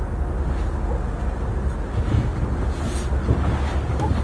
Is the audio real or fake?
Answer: real